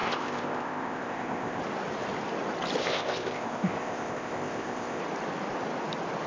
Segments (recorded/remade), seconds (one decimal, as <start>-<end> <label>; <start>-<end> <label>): 0.0-1.6 remade; 1.6-2.8 recorded; 2.8-5.0 remade; 5.0-6.3 recorded